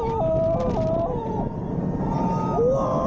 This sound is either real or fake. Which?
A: real